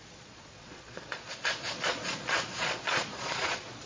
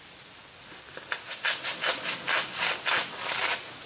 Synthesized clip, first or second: first